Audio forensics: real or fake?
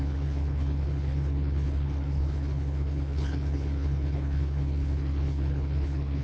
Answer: fake